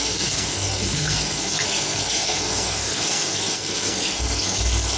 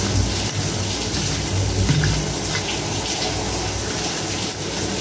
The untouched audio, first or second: second